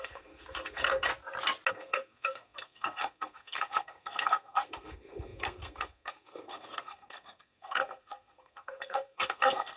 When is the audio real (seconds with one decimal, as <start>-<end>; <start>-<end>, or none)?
1.1-1.7

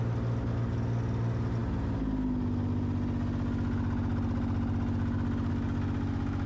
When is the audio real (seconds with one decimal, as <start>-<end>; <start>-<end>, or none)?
0.0-6.5

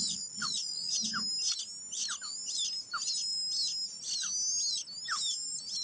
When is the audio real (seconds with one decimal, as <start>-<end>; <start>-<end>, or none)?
0.9-5.8

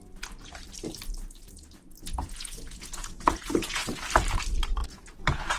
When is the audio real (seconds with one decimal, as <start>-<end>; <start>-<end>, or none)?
0.0-2.0; 4.0-4.8

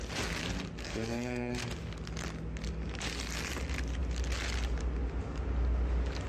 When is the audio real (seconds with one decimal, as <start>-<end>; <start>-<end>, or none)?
0.0-0.8; 1.5-6.3